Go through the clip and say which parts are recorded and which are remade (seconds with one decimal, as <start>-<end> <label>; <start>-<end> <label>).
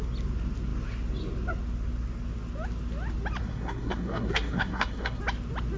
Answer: 0.0-3.4 recorded; 3.4-5.2 remade; 5.2-5.8 recorded